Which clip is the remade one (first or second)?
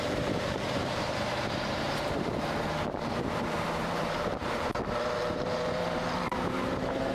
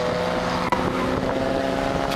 first